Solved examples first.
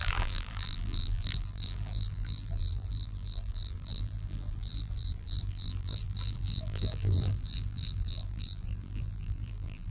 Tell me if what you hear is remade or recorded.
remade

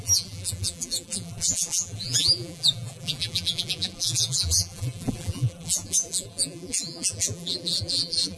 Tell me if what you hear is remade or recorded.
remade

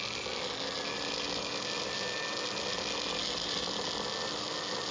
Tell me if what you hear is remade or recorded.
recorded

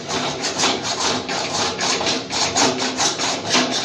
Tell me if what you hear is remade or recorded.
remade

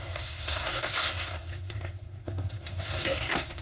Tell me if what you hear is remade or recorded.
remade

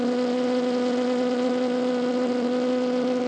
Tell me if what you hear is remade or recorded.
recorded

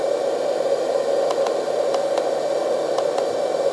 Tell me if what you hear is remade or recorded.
recorded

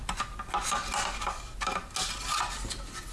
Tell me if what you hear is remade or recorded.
recorded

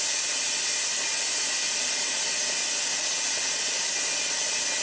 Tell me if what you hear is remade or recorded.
recorded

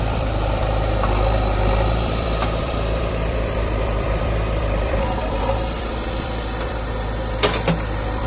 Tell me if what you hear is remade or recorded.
remade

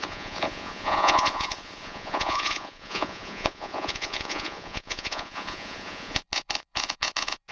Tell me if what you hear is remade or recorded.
remade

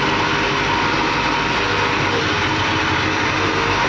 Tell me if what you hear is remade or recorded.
recorded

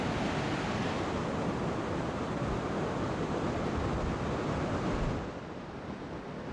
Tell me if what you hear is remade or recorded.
recorded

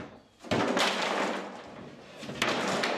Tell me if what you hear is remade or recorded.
recorded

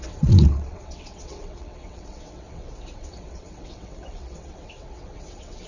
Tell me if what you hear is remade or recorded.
remade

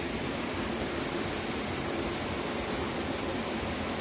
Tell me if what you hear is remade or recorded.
recorded